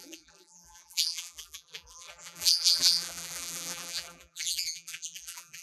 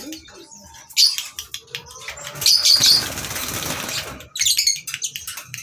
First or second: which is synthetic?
first